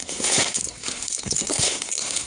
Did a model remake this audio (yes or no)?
yes